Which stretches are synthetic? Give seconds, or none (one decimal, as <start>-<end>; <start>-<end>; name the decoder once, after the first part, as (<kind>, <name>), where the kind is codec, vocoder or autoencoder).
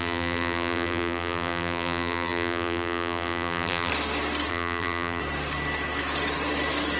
0.0-3.9 (vocoder, BigVGAN v2); 4.5-5.2